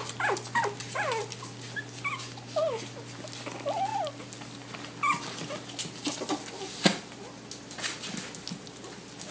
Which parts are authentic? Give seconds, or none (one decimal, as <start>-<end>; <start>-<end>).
0.0-9.3